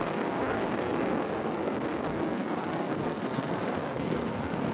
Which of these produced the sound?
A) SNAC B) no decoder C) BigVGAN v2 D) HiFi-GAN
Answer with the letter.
A